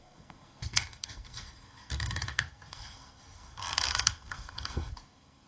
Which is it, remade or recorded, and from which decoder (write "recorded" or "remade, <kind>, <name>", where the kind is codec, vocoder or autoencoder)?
remade, codec, SNAC